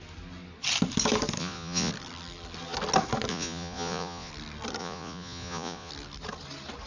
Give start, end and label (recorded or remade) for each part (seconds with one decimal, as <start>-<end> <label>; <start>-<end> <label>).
0.0-1.4 recorded; 1.4-1.9 remade; 1.9-3.3 recorded; 3.3-4.3 remade; 4.3-4.8 recorded; 4.8-5.9 remade; 5.9-6.9 recorded